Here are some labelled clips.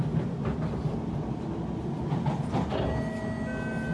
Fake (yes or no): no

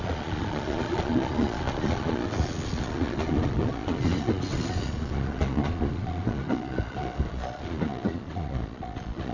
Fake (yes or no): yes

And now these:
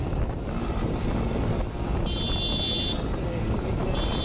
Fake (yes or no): no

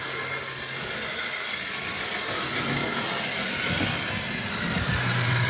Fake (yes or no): no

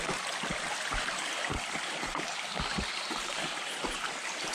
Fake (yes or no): no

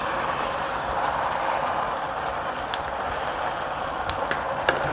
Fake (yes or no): no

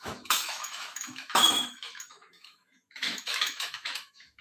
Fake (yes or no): yes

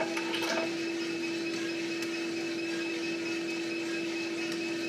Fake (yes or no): no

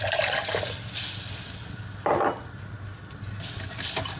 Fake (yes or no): no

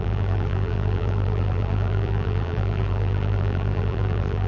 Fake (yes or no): yes